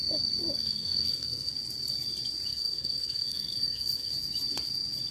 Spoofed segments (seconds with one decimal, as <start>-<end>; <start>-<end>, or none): 0.6-1.5; 2.5-4.1